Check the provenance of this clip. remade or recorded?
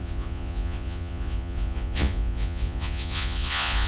remade